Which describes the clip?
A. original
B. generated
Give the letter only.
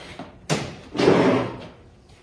A